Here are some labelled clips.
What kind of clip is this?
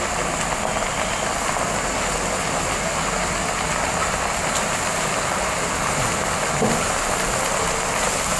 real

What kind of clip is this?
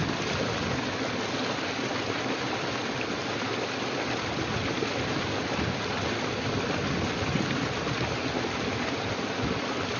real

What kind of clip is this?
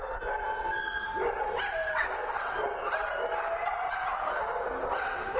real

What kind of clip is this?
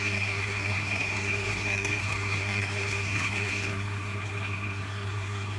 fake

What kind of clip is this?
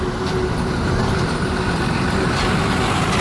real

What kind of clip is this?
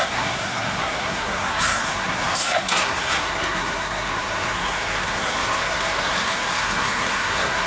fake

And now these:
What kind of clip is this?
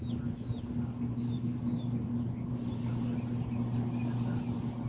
real